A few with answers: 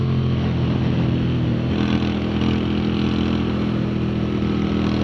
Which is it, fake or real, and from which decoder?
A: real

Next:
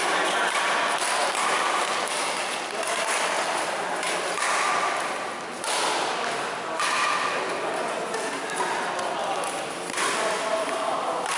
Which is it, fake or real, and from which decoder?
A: real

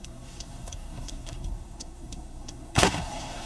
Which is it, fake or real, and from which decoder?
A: fake, codec, SNAC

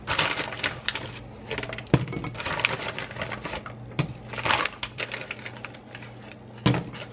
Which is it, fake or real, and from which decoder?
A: real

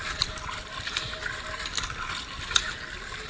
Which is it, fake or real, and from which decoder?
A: real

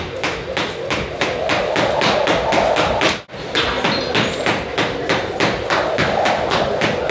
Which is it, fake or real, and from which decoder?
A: real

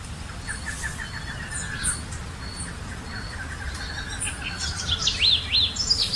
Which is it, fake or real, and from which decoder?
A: real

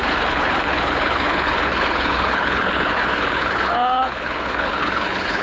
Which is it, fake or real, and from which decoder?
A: fake, codec, HILCodec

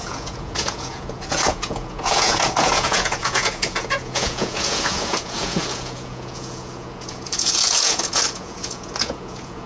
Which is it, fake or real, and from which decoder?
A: fake, vocoder, Vocos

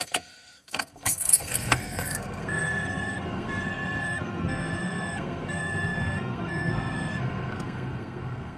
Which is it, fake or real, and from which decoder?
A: fake, codec, SNAC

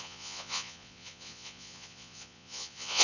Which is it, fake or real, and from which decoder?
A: fake, vocoder, Vocos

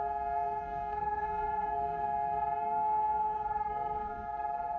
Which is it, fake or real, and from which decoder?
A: fake, codec, SNAC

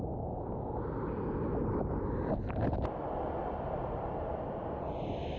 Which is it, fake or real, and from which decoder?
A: real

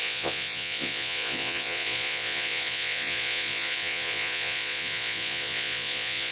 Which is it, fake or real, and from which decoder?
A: fake, vocoder, Vocos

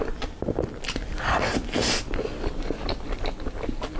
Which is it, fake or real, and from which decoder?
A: real